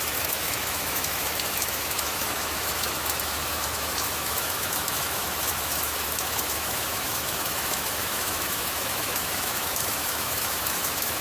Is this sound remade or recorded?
remade